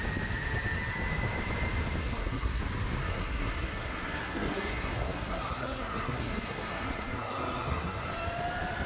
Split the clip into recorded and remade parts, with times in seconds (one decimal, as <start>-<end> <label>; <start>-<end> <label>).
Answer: 0.0-2.0 recorded; 2.0-2.6 remade; 2.6-3.0 recorded; 3.0-8.1 remade; 8.1-8.9 recorded